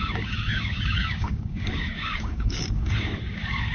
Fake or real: fake